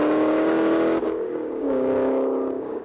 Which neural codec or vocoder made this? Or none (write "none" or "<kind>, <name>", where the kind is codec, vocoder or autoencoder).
codec, DAC